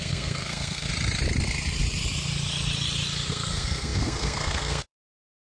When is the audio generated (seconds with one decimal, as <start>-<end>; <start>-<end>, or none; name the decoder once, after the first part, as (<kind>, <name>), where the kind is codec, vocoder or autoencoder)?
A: 0.0-0.9 (codec, SNAC); 3.3-5.4